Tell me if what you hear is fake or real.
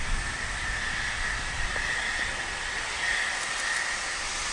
real